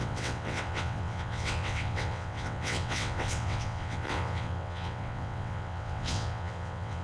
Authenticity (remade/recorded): remade